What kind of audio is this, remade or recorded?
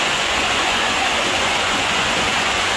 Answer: remade